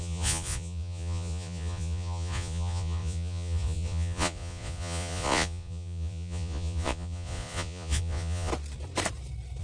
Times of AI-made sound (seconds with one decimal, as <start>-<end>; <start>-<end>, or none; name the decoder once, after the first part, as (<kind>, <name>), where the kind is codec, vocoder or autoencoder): 0.0-8.5 (vocoder, Vocos)